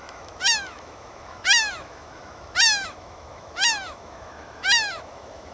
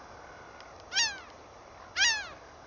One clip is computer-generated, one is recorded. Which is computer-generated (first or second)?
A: first